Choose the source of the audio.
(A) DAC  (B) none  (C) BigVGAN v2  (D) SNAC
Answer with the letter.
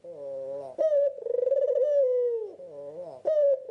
B